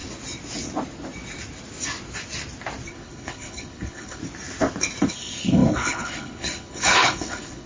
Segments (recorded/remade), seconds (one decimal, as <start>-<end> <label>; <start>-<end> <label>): 0.0-2.9 recorded; 2.9-4.2 remade; 4.2-5.1 recorded; 5.1-7.7 remade